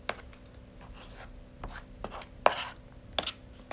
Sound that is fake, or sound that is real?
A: real